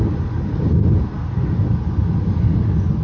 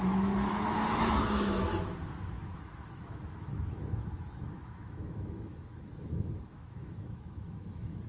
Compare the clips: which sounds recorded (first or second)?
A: first